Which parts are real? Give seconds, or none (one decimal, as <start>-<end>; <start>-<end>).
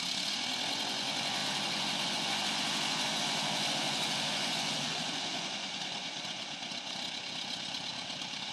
none